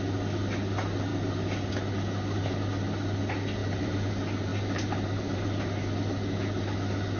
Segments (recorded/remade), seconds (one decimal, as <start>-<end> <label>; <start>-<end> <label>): 0.0-3.6 recorded; 3.6-4.1 remade; 4.1-4.5 recorded; 4.5-5.6 remade; 5.6-7.2 recorded